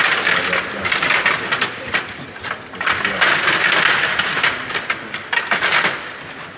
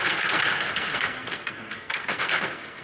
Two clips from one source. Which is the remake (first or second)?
second